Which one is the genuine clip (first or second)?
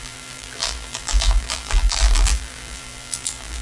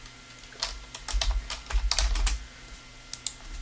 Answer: second